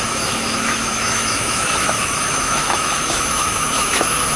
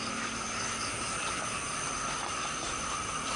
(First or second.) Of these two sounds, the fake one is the first